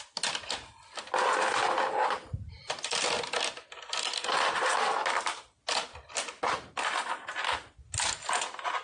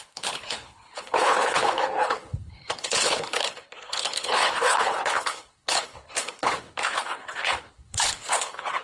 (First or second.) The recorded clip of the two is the first